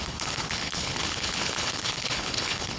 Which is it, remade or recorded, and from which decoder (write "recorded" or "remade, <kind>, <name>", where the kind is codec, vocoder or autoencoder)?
remade, codec, HILCodec